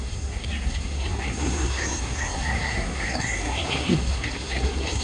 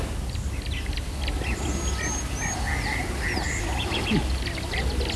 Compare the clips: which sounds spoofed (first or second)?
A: first